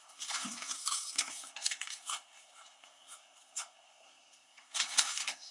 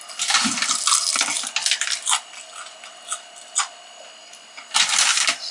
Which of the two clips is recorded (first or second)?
second